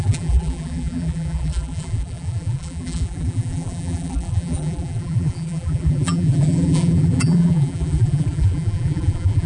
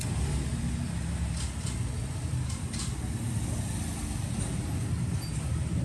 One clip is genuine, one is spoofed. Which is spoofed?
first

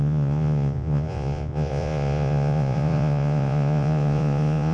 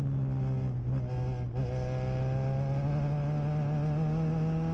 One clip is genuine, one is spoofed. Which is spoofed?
first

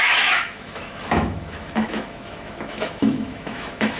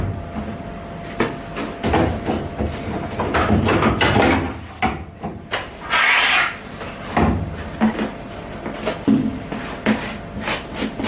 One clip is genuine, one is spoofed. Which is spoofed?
first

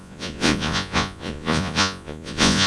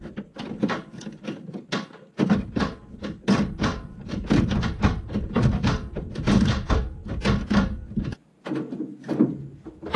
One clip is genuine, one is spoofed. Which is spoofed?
first